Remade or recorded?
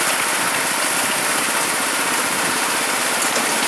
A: recorded